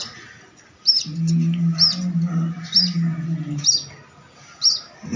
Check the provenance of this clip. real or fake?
real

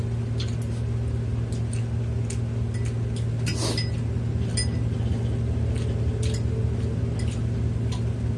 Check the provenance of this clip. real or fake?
real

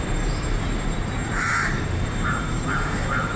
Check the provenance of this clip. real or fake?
fake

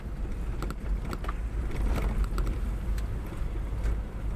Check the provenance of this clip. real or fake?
real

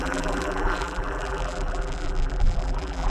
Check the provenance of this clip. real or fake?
fake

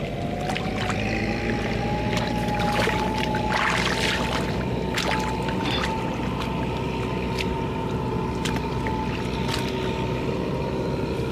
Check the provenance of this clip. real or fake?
real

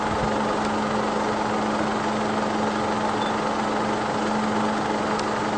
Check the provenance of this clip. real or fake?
real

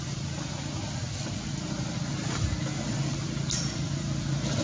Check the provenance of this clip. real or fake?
real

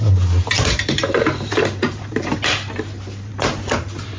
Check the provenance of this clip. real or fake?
fake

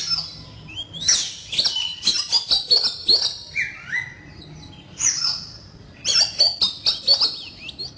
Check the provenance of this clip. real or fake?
real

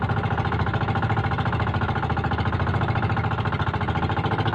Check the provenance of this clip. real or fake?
real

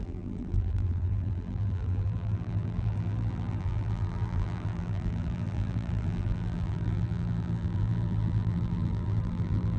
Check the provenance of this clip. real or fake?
fake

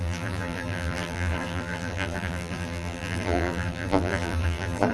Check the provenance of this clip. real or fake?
fake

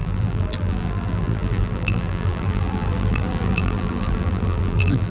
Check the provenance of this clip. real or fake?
fake